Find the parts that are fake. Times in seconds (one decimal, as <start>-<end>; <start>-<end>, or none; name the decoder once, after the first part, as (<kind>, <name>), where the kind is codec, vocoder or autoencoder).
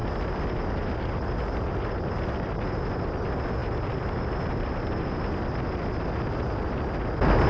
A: none